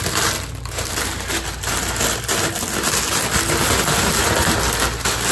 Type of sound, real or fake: real